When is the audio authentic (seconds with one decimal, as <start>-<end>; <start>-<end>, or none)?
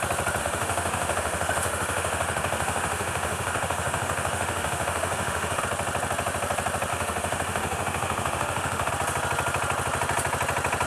0.0-0.4; 5.6-6.9; 8.9-10.9